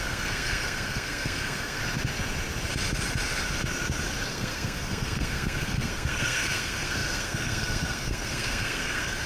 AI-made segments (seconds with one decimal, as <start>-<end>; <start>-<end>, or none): 0.0-1.8; 4.3-9.3